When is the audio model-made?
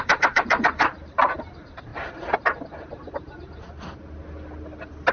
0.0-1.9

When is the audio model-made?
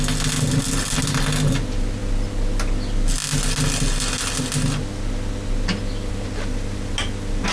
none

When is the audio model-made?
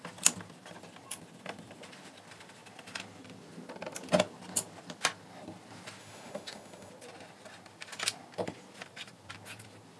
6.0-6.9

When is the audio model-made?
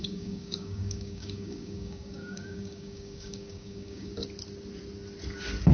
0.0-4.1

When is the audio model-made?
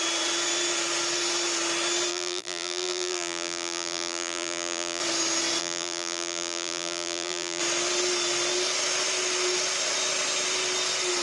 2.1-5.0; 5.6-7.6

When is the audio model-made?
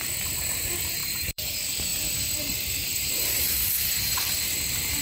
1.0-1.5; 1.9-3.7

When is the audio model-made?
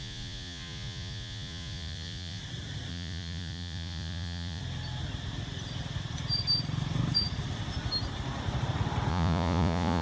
0.0-2.4; 2.9-4.6; 9.1-10.0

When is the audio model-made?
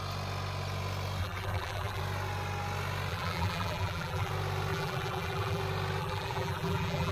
1.2-2.0; 3.1-4.3; 4.7-5.6; 6.0-7.1